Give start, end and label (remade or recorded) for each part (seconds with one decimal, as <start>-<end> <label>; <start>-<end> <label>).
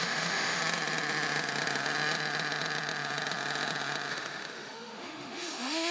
0.0-0.6 remade; 0.6-4.1 recorded; 4.1-5.9 remade